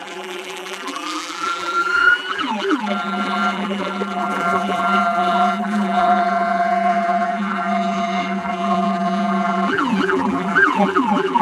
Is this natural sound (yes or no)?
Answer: no